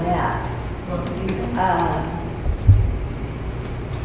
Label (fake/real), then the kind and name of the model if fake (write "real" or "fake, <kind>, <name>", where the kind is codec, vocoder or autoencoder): real